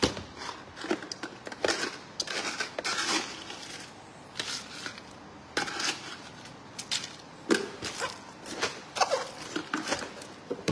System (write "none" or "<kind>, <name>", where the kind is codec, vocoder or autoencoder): none